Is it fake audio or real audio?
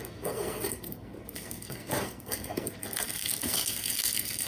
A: fake